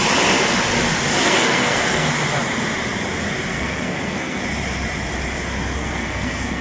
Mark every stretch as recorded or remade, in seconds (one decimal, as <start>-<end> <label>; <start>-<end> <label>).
0.0-1.2 recorded; 1.2-2.1 remade; 2.1-3.5 recorded; 3.5-4.4 remade; 4.4-5.8 recorded; 5.8-6.6 remade